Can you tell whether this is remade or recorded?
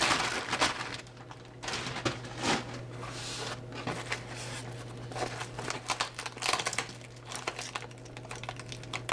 recorded